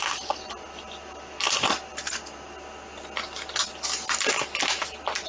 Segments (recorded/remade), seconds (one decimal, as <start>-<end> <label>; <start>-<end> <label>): 0.0-5.3 recorded

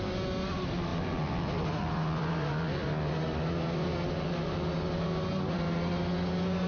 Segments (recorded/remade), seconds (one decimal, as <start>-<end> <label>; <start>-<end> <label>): 0.0-6.7 recorded

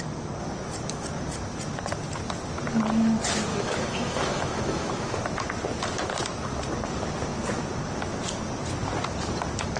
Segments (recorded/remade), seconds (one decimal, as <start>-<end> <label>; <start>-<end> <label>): 0.0-3.5 recorded; 3.5-5.2 remade; 5.2-9.8 recorded

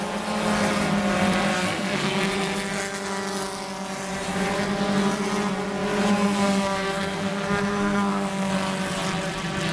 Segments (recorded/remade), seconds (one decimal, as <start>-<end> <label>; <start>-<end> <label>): 0.0-1.5 recorded; 1.5-2.2 remade; 2.2-6.1 recorded; 6.1-8.5 remade; 8.5-9.7 recorded